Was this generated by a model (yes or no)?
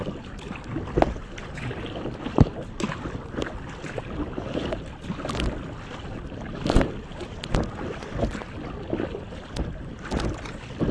no